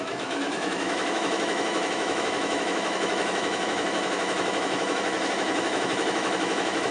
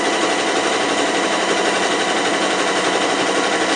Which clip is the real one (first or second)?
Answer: second